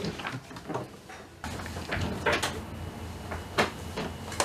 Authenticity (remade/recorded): recorded